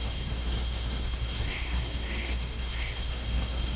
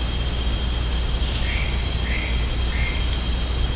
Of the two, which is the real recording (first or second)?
second